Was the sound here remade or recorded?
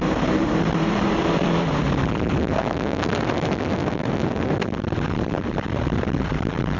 remade